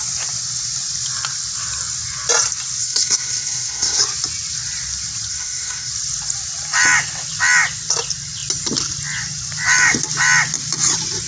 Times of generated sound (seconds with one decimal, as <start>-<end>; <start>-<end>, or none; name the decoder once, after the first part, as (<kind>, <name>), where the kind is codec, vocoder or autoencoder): 2.8-4.0 (codec, SNAC); 5.3-5.9